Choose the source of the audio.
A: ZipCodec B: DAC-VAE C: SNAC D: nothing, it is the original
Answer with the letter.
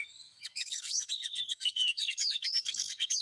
C